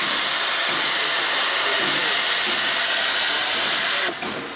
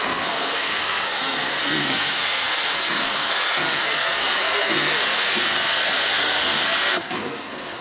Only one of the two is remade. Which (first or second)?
second